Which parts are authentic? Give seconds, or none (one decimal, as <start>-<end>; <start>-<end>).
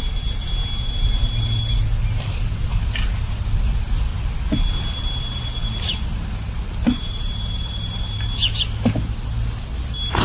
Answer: 0.0-10.2